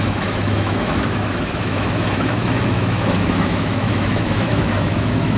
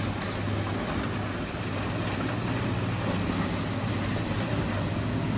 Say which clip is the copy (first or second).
first